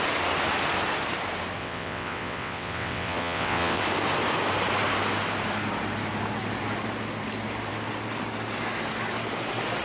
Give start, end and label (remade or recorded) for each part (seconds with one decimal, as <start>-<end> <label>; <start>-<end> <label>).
0.0-1.6 recorded; 1.6-3.8 remade; 3.8-9.8 recorded